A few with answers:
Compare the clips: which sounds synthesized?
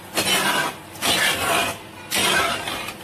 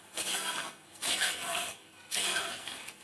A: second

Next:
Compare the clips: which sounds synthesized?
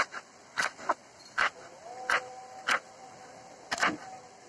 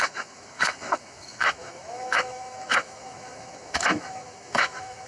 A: second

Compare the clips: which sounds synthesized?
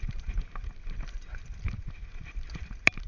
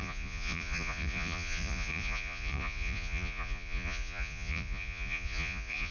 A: second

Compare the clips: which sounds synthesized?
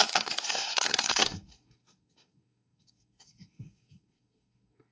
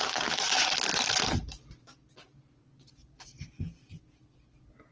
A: first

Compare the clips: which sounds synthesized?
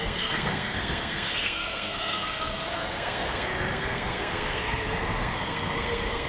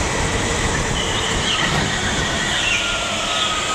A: first